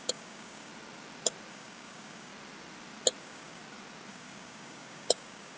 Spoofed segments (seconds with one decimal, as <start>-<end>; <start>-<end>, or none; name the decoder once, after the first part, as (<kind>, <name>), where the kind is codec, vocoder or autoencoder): 0.0-0.7 (codec, DAC); 1.5-2.3; 3.2-3.6; 4.1-5.6